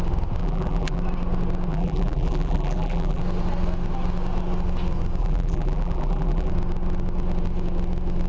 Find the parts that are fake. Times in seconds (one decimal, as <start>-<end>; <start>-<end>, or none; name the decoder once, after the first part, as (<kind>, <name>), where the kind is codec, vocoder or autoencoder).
0.4-1.0 (vocoder, BigVGAN v2); 1.7-3.2; 5.2-6.5